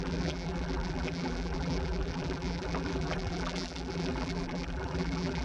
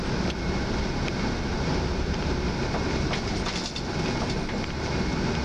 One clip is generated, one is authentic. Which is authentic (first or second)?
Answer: second